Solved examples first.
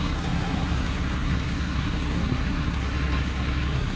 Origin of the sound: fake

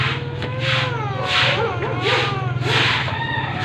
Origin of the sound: real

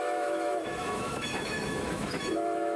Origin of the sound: fake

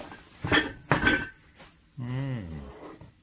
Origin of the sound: real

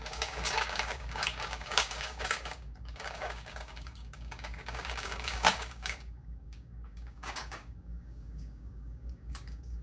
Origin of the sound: fake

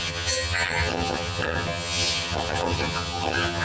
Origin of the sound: fake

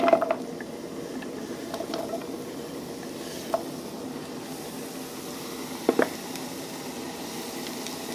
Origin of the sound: real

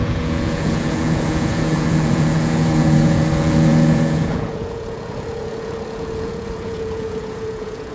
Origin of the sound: fake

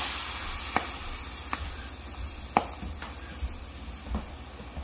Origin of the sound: real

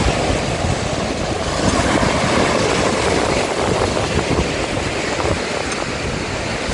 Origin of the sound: real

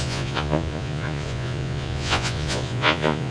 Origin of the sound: fake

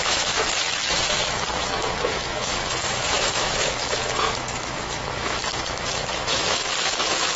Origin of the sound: fake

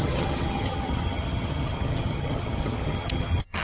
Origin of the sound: fake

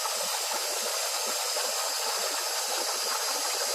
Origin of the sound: real